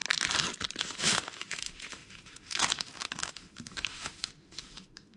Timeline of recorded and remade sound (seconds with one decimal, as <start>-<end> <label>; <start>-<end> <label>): 0.0-0.8 recorded; 0.8-5.2 remade